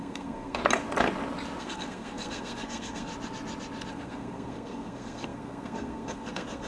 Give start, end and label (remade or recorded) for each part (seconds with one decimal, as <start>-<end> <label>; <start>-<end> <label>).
0.0-0.6 remade; 0.6-1.6 recorded; 1.6-3.1 remade; 3.1-3.9 recorded; 3.9-6.7 remade